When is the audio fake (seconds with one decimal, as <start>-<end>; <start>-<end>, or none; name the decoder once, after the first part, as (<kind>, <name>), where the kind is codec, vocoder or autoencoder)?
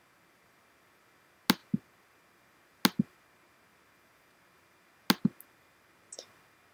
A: none